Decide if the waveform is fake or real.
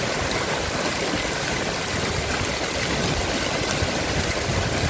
real